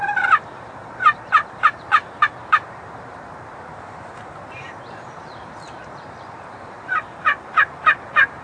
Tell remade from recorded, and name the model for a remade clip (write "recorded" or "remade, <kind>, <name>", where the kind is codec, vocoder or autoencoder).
remade, vocoder, BigVGAN v2